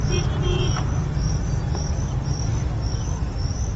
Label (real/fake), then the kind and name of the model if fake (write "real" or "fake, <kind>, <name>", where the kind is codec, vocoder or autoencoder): real